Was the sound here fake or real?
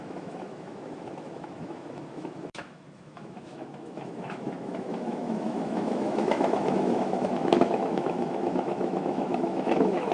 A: fake